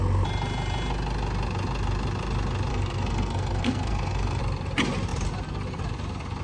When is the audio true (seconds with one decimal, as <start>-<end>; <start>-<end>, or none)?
0.0-2.7; 4.4-6.4